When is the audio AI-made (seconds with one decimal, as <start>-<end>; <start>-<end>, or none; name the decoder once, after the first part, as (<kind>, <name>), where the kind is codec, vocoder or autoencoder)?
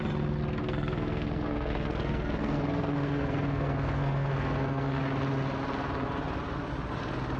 0.6-5.0 (codec, SNAC)